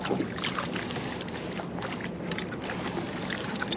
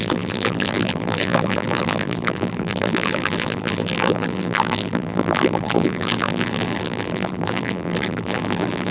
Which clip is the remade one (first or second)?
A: second